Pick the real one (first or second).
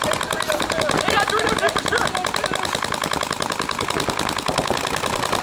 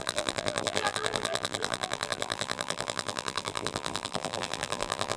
first